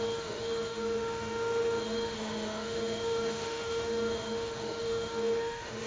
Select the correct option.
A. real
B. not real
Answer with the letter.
B